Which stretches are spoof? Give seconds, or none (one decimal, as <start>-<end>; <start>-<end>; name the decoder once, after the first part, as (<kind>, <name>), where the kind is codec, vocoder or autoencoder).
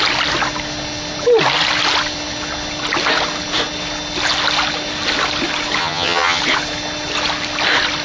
5.8-6.4 (vocoder, HiFi-GAN)